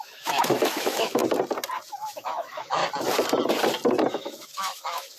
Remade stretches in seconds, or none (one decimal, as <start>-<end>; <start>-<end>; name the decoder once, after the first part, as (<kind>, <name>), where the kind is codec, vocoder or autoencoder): 0.0-1.2 (autoencoder, DAC-VAE); 1.9-2.8; 4.1-5.2

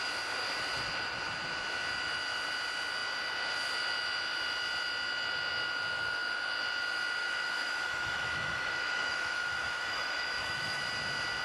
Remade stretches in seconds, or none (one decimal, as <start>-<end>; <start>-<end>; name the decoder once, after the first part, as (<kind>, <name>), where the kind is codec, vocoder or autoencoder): 7.2-10.8 (autoencoder, DAC-VAE)